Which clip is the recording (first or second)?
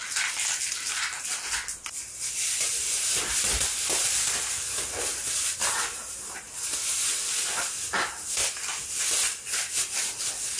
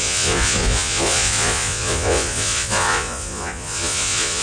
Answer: first